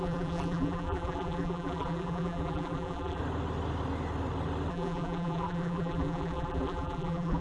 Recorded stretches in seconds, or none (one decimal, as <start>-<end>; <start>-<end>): 3.2-4.7